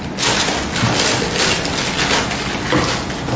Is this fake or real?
real